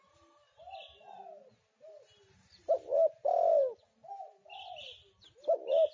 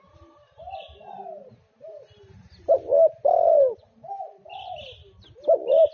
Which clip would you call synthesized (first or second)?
second